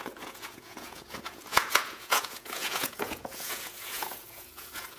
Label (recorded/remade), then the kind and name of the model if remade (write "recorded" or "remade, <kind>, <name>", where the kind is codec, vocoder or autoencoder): remade, vocoder, Vocos